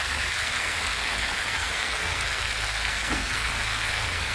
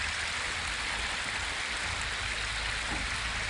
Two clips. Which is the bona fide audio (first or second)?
second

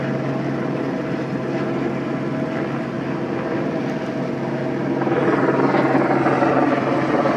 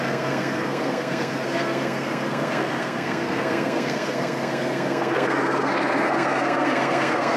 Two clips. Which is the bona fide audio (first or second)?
first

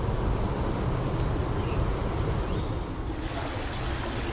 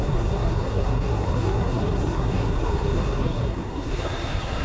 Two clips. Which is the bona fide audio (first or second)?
first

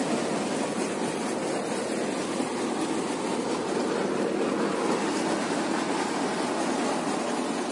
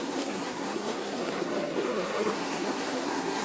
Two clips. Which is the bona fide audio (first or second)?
first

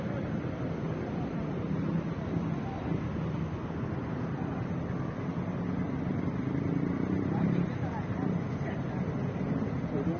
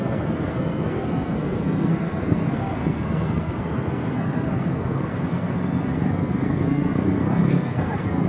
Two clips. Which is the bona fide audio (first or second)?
first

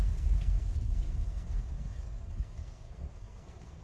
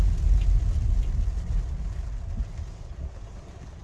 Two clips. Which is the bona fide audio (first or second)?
second